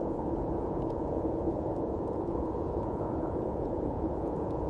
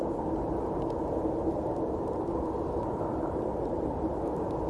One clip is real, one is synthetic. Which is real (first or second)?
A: second